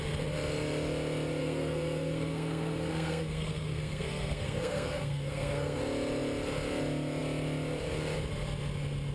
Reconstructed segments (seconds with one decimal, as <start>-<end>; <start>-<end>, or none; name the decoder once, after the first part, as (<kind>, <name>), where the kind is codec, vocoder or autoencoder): 1.4-5.8 (codec, SNAC)